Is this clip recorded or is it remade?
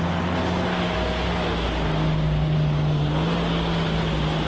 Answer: recorded